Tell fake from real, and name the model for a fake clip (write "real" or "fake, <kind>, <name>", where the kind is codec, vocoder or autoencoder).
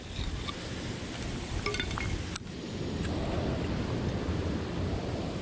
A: real